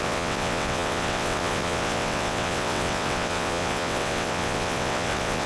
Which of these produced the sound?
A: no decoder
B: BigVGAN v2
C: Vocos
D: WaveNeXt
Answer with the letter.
D